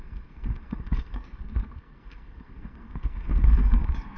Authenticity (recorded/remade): remade